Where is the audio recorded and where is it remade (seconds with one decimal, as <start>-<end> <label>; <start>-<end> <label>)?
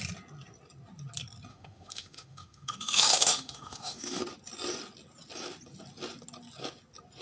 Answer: 0.0-1.5 recorded; 1.5-4.2 remade; 4.2-7.2 recorded